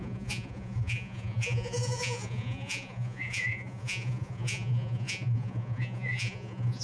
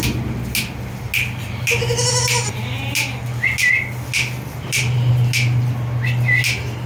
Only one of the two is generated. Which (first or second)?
first